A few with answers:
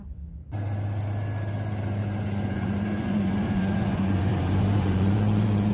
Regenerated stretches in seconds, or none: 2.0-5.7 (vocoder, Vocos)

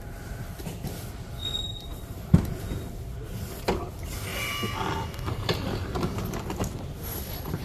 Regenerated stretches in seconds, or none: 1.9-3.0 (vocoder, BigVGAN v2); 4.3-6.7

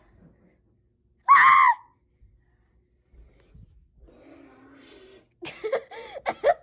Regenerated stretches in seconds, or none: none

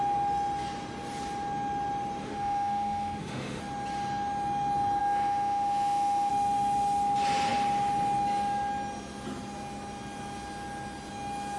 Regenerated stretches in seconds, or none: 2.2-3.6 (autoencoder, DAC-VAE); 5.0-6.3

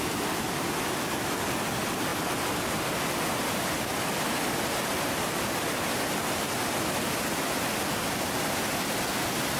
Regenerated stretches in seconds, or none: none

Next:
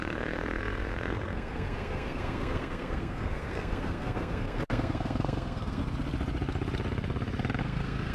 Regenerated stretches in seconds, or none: 0.0-5.8 (codec, SNAC); 7.6-8.1